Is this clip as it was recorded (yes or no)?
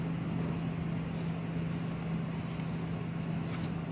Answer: yes